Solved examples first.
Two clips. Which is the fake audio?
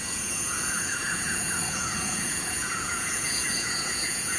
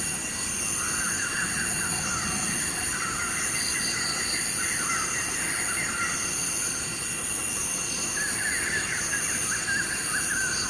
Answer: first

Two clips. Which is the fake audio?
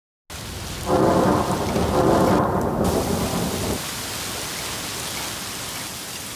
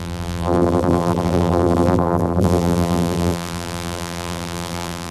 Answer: second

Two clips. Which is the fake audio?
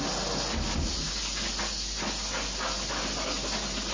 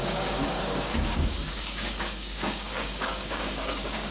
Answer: second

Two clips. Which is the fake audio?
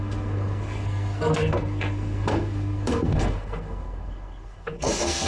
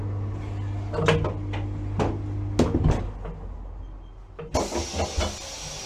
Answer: first